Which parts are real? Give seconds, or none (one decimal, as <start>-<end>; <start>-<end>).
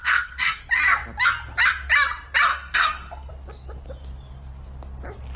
0.6-2.5; 3.3-5.4